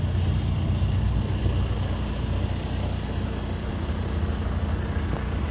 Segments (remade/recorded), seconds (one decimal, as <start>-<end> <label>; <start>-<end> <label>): 0.0-5.5 recorded